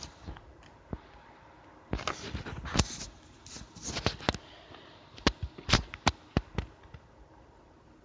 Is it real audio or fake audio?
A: real